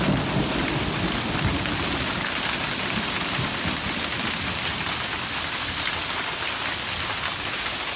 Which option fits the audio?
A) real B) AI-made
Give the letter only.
A